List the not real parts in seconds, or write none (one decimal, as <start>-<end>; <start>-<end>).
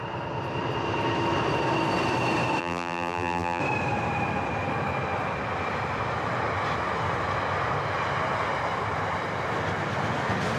2.6-3.6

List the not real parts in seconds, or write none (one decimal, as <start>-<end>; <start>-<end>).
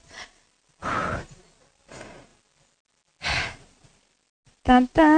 none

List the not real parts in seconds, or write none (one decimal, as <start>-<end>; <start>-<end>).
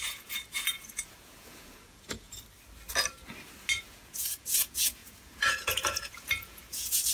0.0-2.4; 3.8-7.1